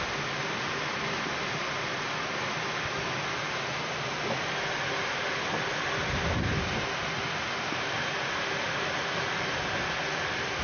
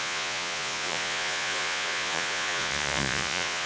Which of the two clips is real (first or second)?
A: first